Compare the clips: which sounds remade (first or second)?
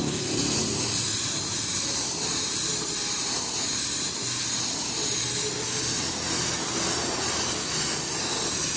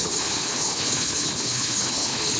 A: second